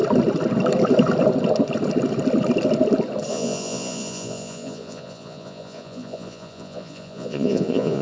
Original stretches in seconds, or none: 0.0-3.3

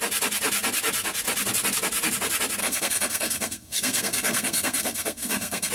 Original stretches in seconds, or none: 0.0-2.6

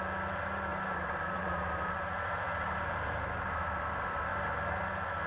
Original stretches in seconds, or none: 0.0-0.7; 3.9-5.3

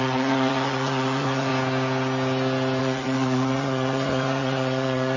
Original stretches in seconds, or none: 1.5-2.8